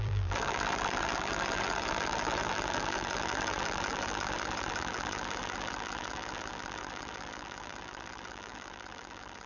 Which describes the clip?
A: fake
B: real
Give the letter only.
A